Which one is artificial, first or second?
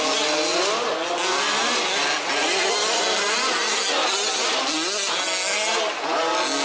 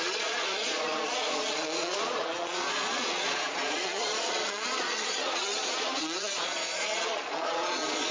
second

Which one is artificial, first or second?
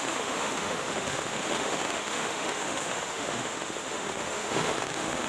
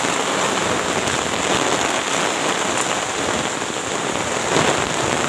first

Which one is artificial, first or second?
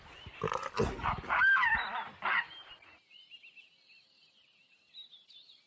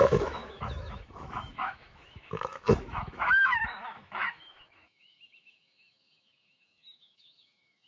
second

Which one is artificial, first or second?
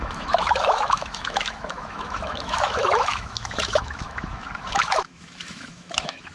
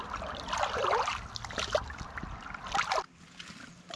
first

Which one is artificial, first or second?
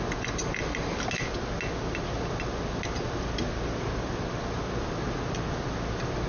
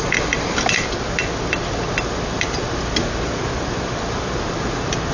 second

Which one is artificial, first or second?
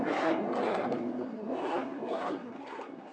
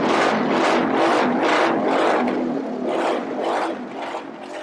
first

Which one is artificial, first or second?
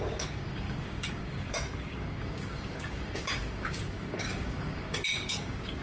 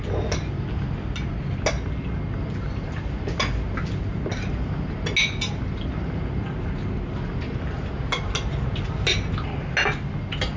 first